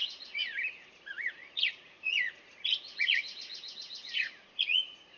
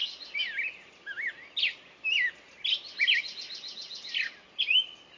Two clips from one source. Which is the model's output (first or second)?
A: first